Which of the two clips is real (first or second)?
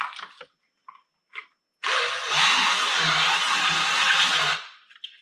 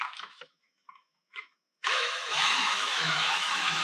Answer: first